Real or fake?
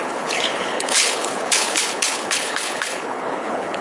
fake